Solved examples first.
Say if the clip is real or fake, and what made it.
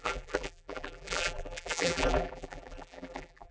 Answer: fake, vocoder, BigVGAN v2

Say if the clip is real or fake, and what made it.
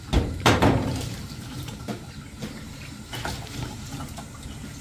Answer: fake, vocoder, BigVGAN v2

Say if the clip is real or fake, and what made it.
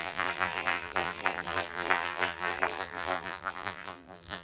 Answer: fake, vocoder, BigVGAN v2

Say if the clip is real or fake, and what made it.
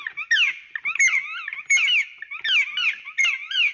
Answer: real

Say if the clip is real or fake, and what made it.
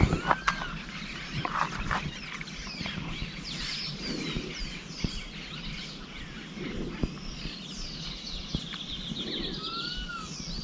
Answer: fake, vocoder, BigVGAN v2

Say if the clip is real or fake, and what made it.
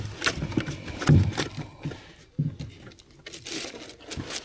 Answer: real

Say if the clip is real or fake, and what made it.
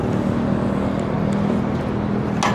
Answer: real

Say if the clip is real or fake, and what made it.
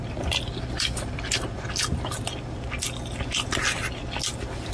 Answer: real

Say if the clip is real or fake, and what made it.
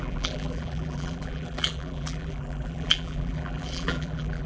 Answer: fake, vocoder, BigVGAN v2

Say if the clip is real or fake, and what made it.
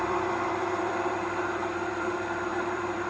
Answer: fake, vocoder, BigVGAN v2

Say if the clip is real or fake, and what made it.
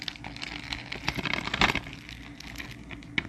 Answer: real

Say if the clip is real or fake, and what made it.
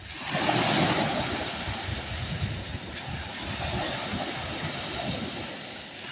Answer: real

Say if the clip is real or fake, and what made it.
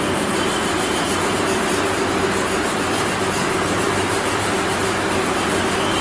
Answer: fake, vocoder, BigVGAN v2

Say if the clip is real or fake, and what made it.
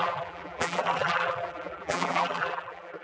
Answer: fake, vocoder, BigVGAN v2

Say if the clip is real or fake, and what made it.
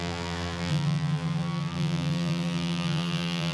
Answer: fake, vocoder, BigVGAN v2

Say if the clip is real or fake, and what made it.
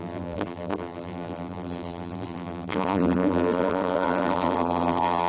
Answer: fake, vocoder, BigVGAN v2